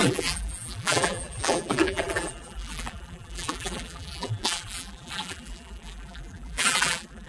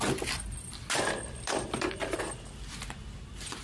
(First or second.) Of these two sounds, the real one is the second